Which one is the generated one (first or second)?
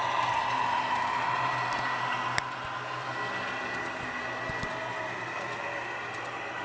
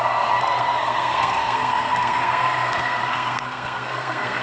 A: second